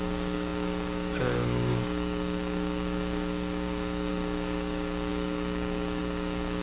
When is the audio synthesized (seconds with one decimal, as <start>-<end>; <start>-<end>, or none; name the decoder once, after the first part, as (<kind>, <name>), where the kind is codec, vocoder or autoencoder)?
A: 0.0-6.6 (codec, DAC)